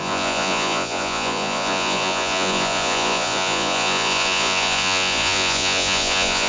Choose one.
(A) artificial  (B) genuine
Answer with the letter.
A